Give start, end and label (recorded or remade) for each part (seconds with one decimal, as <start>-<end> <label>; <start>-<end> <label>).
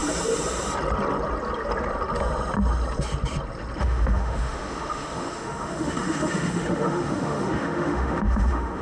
0.0-3.8 recorded; 3.8-8.8 remade